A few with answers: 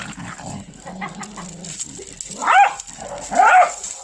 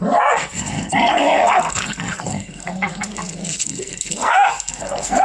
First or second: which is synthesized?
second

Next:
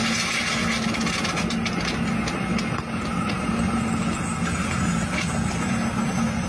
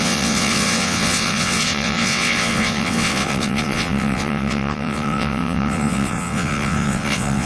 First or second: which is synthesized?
second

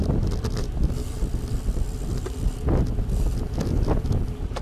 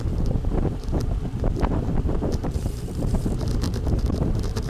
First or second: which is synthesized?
second